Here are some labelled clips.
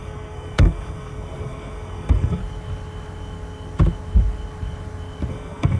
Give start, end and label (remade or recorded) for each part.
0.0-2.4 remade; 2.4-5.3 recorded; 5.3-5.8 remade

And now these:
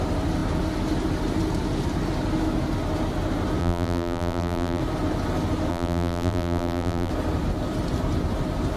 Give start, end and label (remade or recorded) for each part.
0.0-3.6 recorded; 3.6-4.8 remade; 4.8-5.7 recorded; 5.7-7.1 remade; 7.1-8.8 recorded

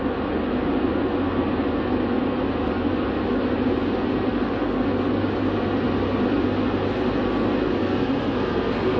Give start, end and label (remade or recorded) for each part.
0.0-7.8 recorded; 7.8-9.0 remade

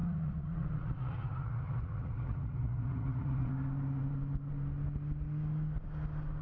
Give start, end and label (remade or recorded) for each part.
0.0-3.5 remade; 3.5-6.4 recorded

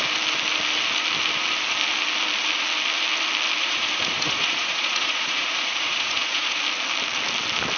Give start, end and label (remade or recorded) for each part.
0.0-3.6 recorded; 3.6-6.6 remade; 6.6-7.8 recorded